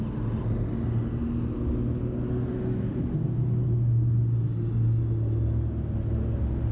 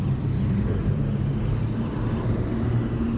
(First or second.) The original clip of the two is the first